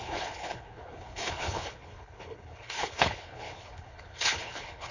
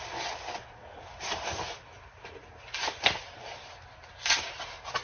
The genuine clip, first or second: second